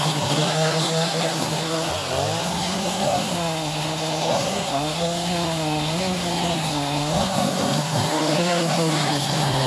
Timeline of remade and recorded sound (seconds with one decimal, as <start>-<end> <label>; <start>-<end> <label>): 0.0-1.9 remade; 1.9-2.4 recorded; 2.4-9.7 remade